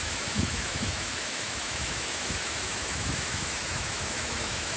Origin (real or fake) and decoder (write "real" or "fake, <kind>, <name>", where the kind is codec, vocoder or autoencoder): fake, autoencoder, DAC-VAE